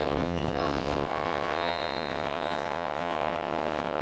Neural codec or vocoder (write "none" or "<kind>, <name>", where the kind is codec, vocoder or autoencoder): vocoder, WaveNeXt